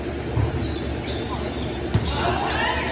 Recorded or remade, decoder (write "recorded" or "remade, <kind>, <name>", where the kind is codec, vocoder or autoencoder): recorded